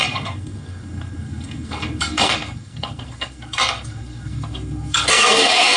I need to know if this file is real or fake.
fake